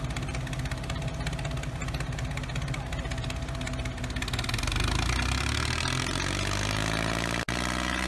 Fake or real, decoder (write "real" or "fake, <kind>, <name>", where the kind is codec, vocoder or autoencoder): real